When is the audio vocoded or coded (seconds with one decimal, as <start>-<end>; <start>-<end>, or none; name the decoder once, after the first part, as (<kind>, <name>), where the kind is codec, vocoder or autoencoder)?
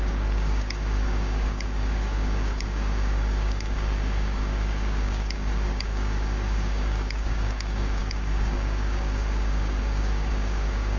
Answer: 0.0-11.0 (codec, DAC)